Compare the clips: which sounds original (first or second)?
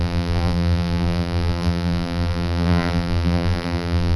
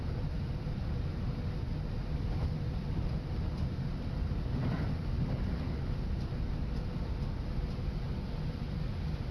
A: second